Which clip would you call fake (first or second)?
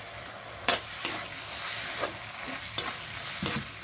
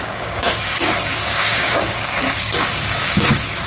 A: second